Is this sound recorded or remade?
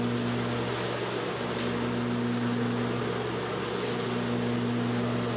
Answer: recorded